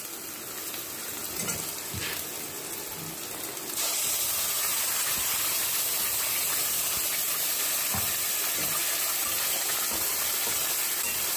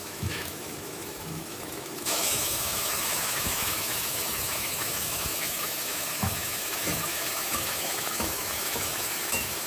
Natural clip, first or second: first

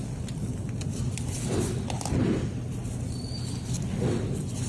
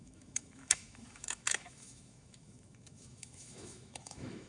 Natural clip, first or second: first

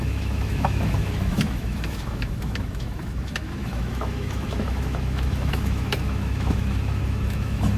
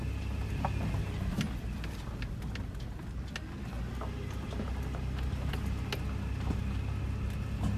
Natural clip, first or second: second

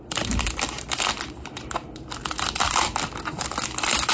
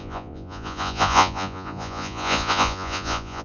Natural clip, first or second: first